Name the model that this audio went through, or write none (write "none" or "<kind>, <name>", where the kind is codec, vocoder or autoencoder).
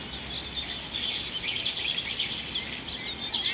none